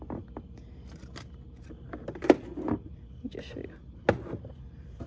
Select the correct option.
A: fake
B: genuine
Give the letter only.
B